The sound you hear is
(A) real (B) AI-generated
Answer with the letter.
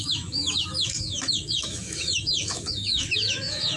B